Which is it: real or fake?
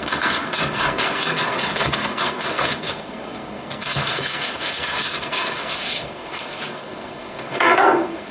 fake